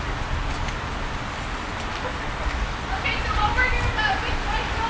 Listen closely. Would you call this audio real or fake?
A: real